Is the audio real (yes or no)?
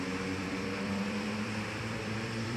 no